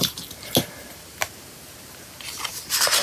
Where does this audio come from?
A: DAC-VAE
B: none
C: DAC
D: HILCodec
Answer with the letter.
B